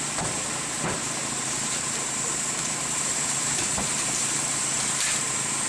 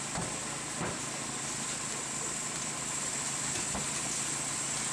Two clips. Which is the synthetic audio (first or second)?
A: first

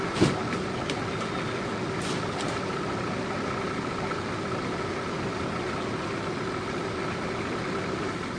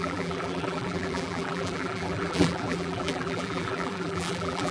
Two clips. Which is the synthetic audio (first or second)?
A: second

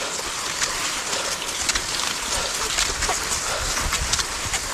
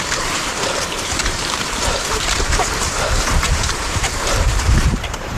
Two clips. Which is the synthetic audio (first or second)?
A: second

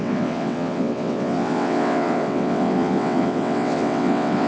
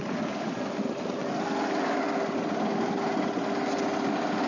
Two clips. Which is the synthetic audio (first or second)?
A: first